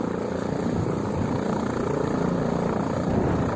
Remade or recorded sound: recorded